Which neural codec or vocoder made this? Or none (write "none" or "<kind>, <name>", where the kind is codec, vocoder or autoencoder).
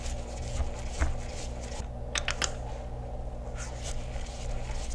none